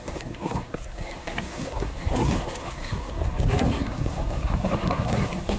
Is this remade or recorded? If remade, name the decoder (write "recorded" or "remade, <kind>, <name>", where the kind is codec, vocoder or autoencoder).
remade, codec, SNAC